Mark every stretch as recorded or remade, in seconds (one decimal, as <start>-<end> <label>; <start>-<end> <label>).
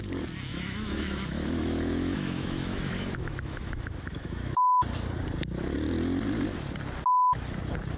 0.0-0.5 recorded; 0.5-4.8 remade; 4.8-8.0 recorded